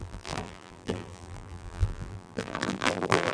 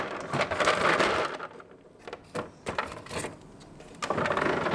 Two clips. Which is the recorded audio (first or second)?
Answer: second